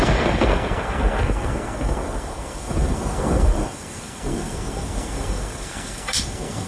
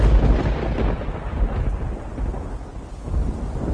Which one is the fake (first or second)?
first